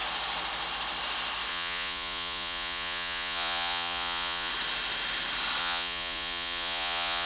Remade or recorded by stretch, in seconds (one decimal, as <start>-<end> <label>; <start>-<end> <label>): 0.0-1.5 recorded; 1.5-4.5 remade; 4.5-5.6 recorded; 5.6-7.3 remade